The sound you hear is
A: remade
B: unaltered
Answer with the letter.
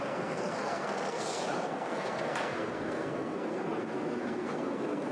A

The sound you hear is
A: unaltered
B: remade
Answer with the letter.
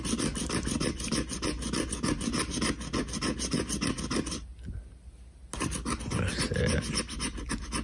A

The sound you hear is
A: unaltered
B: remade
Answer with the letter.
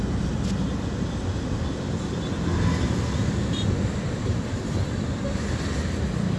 A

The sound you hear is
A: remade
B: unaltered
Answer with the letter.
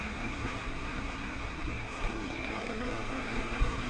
A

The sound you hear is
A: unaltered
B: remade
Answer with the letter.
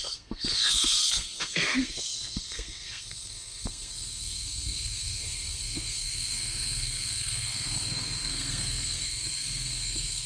B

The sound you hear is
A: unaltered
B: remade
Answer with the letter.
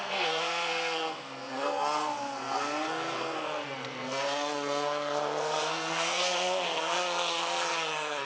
B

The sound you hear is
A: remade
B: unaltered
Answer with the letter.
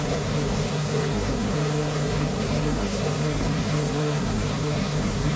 A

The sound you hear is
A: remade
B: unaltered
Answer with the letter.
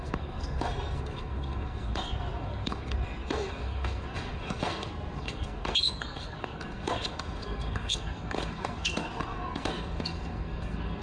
A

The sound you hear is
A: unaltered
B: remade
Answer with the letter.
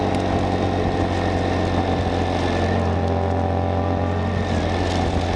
A